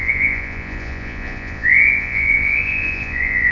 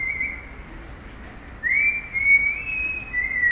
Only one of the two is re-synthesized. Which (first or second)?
first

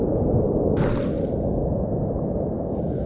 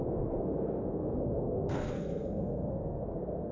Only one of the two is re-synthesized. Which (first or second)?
second